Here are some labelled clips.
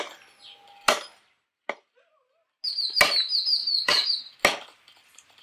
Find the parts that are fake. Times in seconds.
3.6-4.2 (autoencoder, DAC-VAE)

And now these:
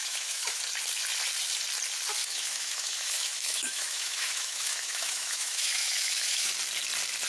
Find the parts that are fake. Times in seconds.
0.0-0.6 (autoencoder, DAC-VAE); 2.2-6.5

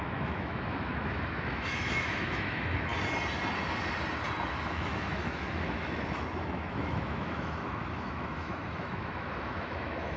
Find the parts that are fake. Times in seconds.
0.0-2.9 (autoencoder, DAC-VAE); 4.7-10.2

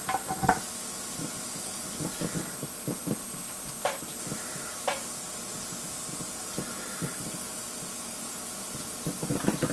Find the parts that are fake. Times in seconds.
none